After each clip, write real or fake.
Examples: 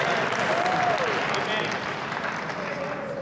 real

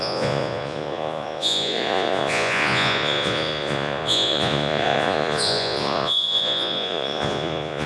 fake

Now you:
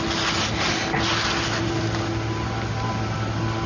real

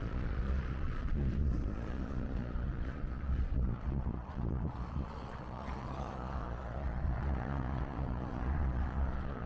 fake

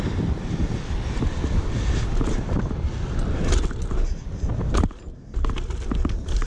real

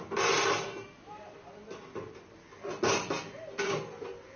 real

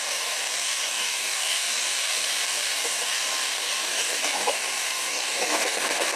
fake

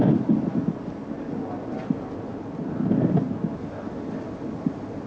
real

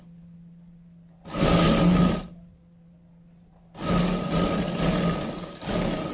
real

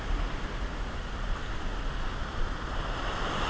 real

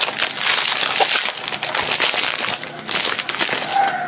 real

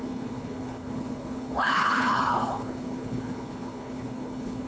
fake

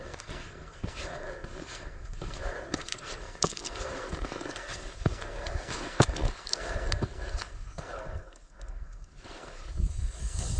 fake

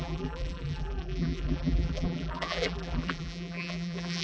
fake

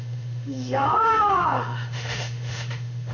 fake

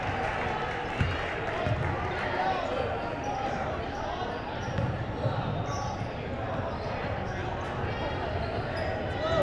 real